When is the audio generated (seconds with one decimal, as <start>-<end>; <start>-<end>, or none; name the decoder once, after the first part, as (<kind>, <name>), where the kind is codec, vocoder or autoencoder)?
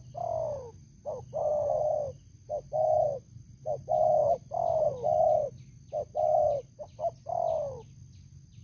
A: none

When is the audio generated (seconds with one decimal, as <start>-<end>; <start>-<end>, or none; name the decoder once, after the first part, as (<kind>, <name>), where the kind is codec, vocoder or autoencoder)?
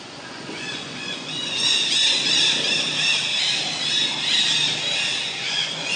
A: 0.0-1.8 (vocoder, Vocos); 5.2-6.0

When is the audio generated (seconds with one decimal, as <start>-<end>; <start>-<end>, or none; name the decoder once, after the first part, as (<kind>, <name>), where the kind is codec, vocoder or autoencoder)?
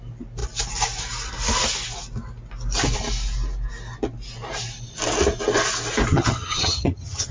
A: 6.1-7.3 (vocoder, HiFi-GAN)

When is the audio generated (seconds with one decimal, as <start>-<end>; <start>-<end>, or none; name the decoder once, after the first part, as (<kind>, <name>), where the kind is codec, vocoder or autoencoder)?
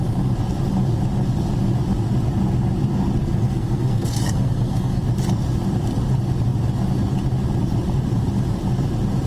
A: 3.2-5.0 (codec, SNAC)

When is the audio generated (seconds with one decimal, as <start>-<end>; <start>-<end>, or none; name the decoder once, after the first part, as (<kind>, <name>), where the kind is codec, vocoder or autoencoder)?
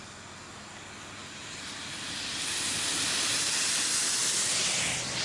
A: 1.2-3.3 (vocoder, BigVGAN v2)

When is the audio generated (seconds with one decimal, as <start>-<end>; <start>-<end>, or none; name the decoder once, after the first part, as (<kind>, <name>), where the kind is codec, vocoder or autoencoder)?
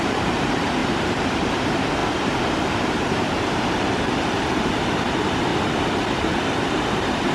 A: 0.0-5.5 (vocoder, BigVGAN v2); 6.7-7.3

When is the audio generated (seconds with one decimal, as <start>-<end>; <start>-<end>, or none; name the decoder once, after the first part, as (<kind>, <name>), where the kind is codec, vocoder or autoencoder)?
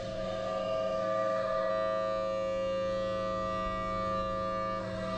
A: 0.0-1.7 (codec, SNAC); 4.8-5.2